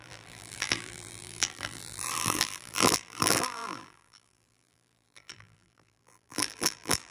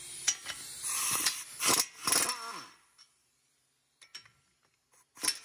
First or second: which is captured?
second